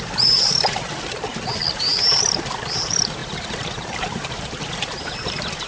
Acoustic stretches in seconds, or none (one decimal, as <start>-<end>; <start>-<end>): none